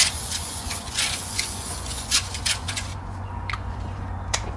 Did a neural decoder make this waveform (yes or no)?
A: yes